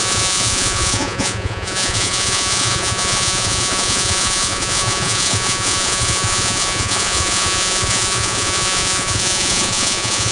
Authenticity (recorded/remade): remade